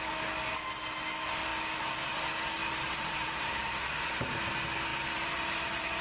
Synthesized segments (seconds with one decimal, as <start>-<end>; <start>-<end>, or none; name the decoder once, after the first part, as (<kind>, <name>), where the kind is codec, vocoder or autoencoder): 2.6-4.4 (vocoder, BigVGAN v2); 4.9-6.0